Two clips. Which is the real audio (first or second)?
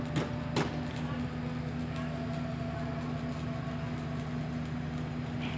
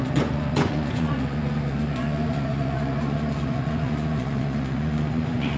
first